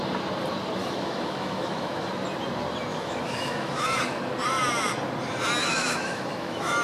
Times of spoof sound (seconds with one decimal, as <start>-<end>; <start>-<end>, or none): 0.8-2.1; 2.9-4.0; 5.6-6.8